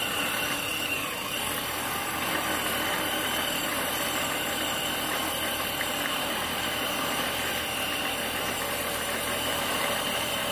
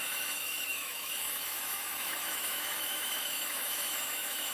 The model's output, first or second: second